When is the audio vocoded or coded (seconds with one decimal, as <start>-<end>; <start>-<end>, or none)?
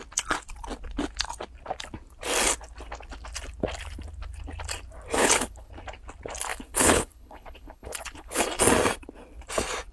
5.2-5.7; 6.5-8.4